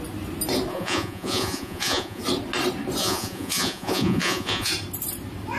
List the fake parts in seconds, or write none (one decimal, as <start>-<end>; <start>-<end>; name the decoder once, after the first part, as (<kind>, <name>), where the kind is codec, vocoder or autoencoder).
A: 0.7-2.2 (vocoder, Vocos); 3.0-4.7